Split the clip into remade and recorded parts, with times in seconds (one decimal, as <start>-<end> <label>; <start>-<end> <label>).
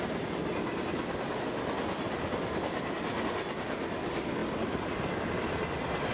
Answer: 0.0-6.1 recorded